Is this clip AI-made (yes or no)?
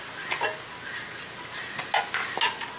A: no